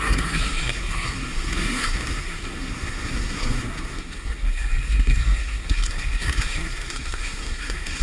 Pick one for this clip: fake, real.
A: fake